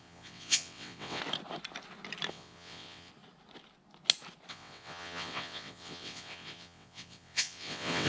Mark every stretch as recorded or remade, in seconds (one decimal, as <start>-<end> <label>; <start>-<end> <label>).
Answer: 0.0-1.2 remade; 1.2-2.3 recorded; 2.3-3.1 remade; 3.1-4.5 recorded; 4.5-8.1 remade

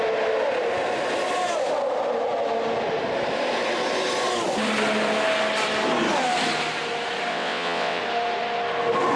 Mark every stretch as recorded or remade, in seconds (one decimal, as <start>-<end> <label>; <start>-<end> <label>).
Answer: 0.0-7.3 recorded; 7.3-8.0 remade; 8.0-9.2 recorded

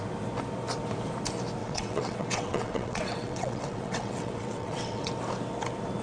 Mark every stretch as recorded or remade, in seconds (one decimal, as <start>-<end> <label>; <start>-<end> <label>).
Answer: 0.0-1.6 recorded; 1.6-5.1 remade; 5.1-6.0 recorded

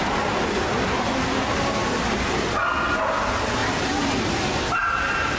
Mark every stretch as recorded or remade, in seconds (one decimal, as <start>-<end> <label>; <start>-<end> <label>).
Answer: 0.0-5.4 recorded

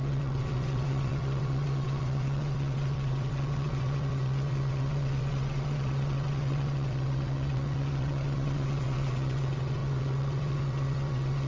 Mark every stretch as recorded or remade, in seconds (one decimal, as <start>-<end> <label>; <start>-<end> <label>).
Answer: 0.0-11.5 remade

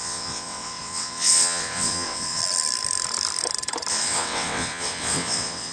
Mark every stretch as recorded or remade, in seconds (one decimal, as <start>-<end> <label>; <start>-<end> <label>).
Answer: 0.0-2.4 remade; 2.4-3.9 recorded; 3.9-5.7 remade

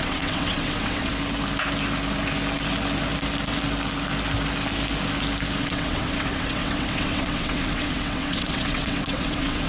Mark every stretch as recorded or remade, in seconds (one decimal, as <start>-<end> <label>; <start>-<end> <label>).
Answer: 0.0-1.1 remade; 1.1-5.6 recorded; 5.6-9.7 remade

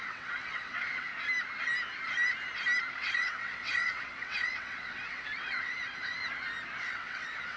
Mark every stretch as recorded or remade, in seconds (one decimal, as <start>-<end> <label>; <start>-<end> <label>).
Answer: 0.0-1.1 remade; 1.1-2.9 recorded; 2.9-6.2 remade; 6.2-6.8 recorded; 6.8-7.6 remade